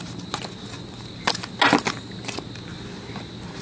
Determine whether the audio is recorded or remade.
recorded